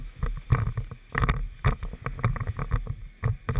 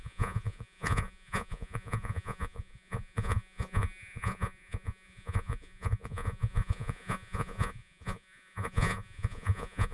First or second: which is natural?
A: first